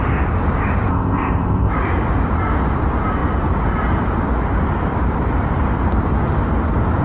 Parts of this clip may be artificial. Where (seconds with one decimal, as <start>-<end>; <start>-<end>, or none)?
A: 0.9-1.7